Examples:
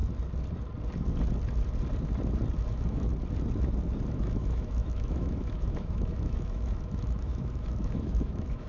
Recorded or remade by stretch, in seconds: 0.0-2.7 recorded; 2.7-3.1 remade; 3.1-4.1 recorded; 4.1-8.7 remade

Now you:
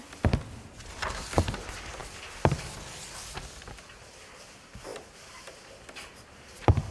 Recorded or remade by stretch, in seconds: 0.0-6.9 recorded

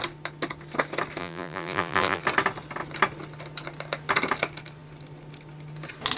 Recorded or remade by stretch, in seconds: 0.0-1.2 recorded; 1.2-2.2 remade; 2.2-6.2 recorded

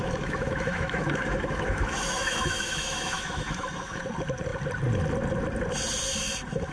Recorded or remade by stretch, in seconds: 0.0-4.0 remade; 4.0-6.7 recorded